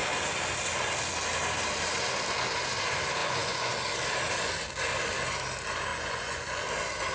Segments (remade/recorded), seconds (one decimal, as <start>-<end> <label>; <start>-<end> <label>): 0.0-3.2 recorded; 3.2-3.7 remade; 3.7-5.9 recorded; 5.9-6.6 remade; 6.6-7.1 recorded